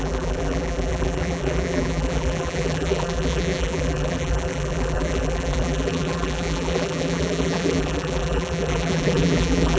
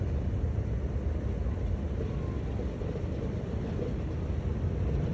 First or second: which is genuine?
second